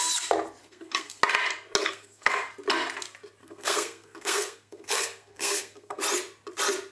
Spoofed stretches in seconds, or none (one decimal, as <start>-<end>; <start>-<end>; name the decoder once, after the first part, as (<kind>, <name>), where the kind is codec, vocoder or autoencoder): 0.6-1.2 (codec, SNAC); 1.8-2.5; 3.4-6.0